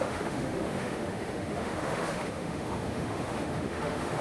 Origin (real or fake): fake